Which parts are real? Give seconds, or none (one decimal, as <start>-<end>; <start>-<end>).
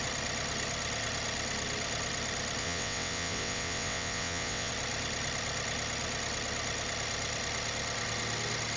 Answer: 0.0-2.6; 4.7-8.8